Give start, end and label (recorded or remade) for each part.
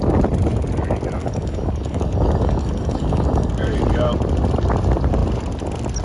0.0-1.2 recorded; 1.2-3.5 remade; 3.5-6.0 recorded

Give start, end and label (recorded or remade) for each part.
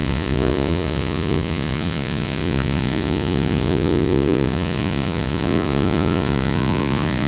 0.0-7.3 remade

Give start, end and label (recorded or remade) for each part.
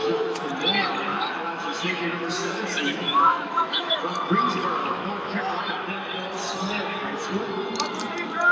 0.0-0.5 remade; 0.5-1.1 recorded; 1.1-4.0 remade; 4.0-4.8 recorded; 4.8-5.6 remade; 5.6-8.5 recorded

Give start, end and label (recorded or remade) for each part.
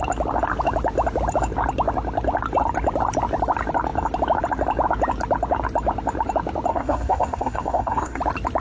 0.0-6.7 recorded; 6.7-8.2 remade; 8.2-8.6 recorded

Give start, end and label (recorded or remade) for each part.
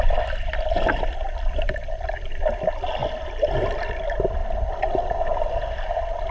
0.0-6.3 recorded